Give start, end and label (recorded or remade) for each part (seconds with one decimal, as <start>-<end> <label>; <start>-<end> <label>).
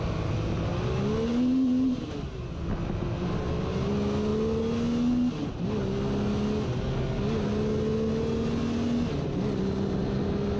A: 0.0-10.6 recorded